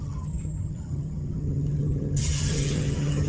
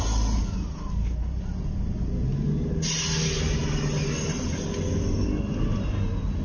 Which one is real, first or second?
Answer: second